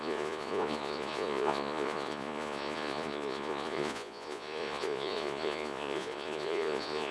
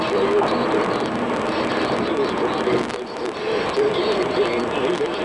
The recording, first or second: second